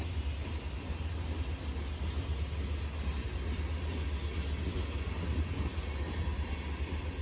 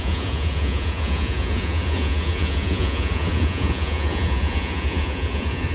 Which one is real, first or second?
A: first